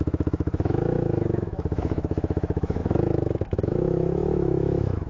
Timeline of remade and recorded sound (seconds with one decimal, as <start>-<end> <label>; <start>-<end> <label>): 0.0-5.1 remade